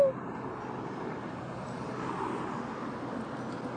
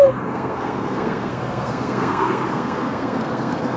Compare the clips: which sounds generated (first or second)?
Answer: second